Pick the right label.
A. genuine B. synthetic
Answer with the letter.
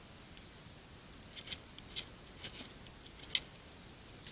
A